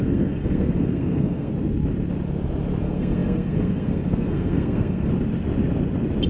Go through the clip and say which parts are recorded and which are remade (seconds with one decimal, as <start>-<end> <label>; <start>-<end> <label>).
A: 0.0-1.5 remade; 1.5-2.8 recorded; 2.8-5.1 remade; 5.1-6.3 recorded